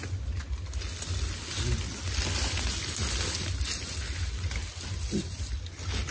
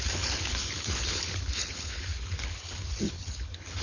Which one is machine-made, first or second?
second